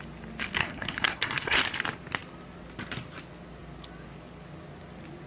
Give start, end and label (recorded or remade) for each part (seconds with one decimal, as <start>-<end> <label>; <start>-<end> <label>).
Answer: 0.0-0.6 recorded; 0.6-1.6 remade; 1.6-5.3 recorded